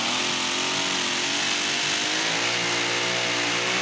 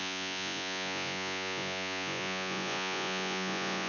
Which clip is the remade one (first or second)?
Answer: second